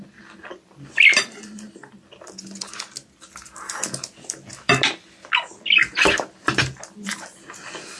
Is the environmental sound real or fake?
real